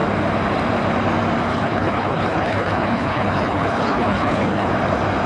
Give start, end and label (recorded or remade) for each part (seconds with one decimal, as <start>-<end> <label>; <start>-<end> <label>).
0.0-1.5 recorded; 1.5-4.7 remade; 4.7-5.3 recorded